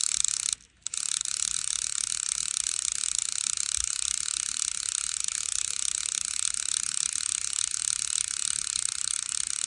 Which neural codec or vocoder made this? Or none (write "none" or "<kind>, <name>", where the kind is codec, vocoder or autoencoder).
none